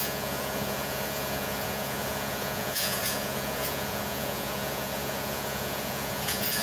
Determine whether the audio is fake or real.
fake